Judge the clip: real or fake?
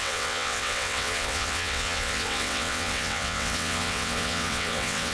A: fake